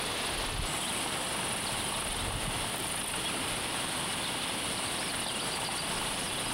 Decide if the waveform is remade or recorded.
recorded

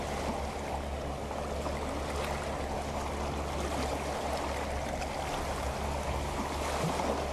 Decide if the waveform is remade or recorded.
recorded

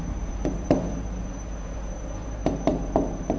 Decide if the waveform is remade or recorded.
remade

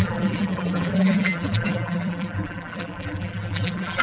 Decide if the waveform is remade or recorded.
remade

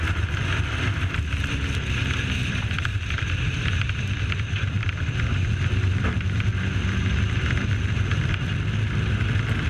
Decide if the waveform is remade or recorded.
remade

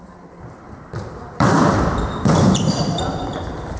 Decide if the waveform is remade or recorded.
remade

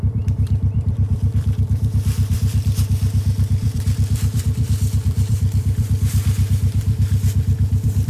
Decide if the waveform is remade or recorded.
remade